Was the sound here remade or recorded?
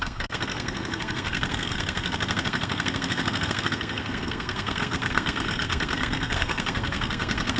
remade